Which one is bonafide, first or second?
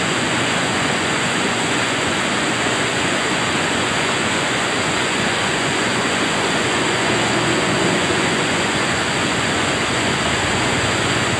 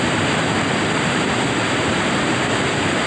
second